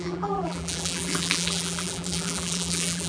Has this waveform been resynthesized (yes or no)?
yes